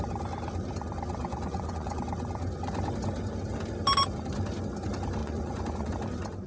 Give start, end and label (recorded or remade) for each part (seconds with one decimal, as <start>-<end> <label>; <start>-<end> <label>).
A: 0.0-1.2 recorded; 1.2-2.0 remade; 2.0-5.2 recorded; 5.2-5.9 remade; 5.9-6.5 recorded